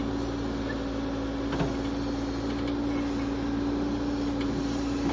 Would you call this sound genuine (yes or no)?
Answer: yes